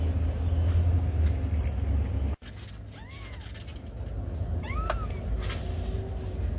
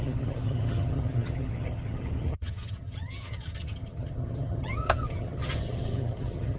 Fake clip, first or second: second